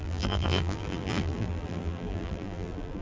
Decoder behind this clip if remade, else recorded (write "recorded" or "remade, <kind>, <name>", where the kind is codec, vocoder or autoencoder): remade, vocoder, BigVGAN v2